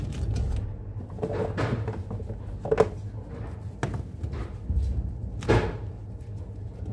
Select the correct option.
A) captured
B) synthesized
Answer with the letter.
A